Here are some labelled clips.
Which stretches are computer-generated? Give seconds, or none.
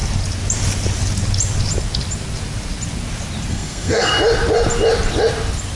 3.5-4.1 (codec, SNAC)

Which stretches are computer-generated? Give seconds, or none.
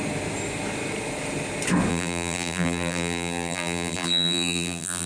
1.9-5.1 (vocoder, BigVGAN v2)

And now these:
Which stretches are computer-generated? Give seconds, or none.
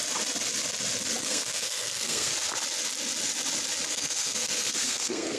1.2-2.3 (codec, SNAC); 3.9-5.4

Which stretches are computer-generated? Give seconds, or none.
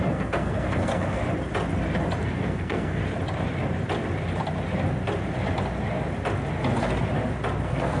0.0-1.2 (codec, SNAC); 2.2-3.0; 7.6-8.0